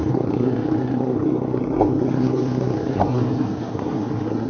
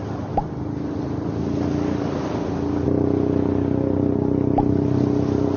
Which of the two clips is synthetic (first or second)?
first